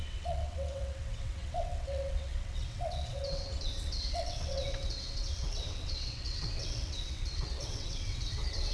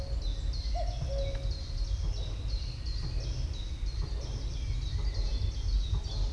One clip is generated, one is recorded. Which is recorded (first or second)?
second